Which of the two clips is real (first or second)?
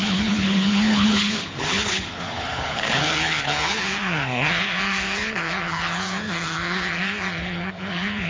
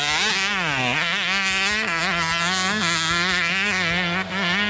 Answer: second